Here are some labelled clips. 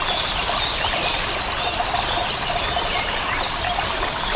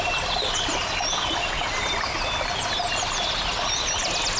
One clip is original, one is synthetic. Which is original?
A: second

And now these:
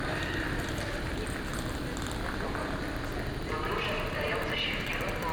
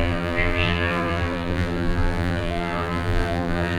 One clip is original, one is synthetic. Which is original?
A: first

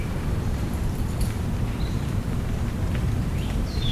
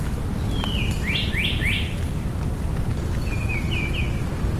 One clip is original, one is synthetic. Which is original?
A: second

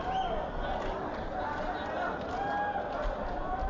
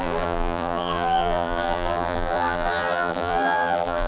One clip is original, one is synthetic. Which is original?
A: first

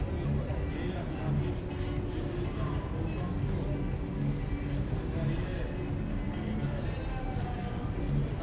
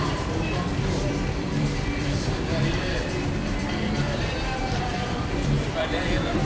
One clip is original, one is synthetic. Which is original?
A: first